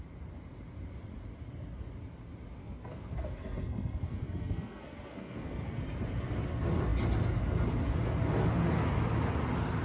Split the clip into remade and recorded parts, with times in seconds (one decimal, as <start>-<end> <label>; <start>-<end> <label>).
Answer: 0.0-2.6 recorded; 2.6-5.8 remade; 5.8-9.8 recorded